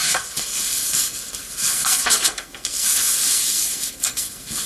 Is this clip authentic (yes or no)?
no